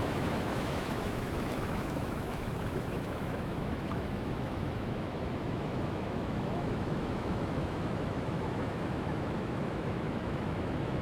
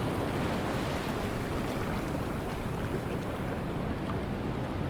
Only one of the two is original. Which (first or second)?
second